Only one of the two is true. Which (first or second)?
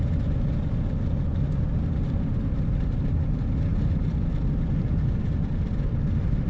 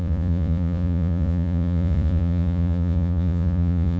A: first